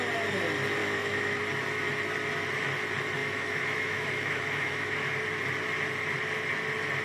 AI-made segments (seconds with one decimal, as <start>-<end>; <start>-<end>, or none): 0.8-1.4; 3.2-5.1